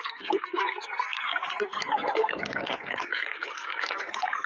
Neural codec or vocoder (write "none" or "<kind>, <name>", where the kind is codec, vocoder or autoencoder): codec, SNAC